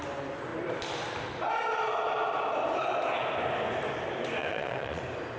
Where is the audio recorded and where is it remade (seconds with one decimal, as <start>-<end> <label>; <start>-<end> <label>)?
0.0-4.4 recorded; 4.4-5.0 remade; 5.0-5.4 recorded